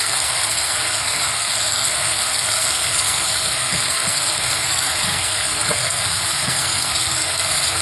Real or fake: fake